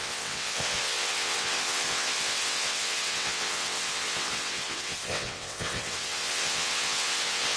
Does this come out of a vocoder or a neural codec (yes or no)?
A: yes